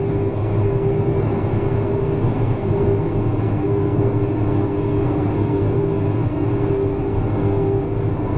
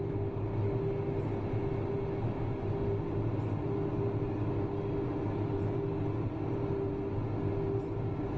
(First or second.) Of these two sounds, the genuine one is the second